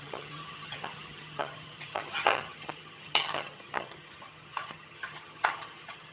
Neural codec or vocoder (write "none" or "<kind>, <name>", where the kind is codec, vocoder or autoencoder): vocoder, HiFi-GAN